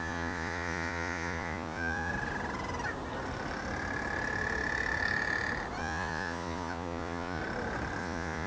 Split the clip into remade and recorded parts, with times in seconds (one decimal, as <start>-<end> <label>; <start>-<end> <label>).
0.0-2.1 remade; 2.1-5.8 recorded; 5.8-7.4 remade; 7.4-8.0 recorded; 8.0-8.5 remade